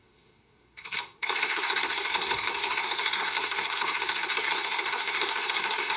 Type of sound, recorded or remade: remade